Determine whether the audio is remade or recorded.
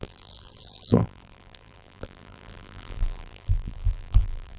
remade